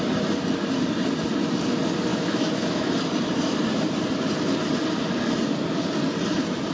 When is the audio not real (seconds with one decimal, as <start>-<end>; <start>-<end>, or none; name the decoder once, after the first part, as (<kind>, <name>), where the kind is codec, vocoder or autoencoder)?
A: 2.1-2.8 (autoencoder, DAC-VAE)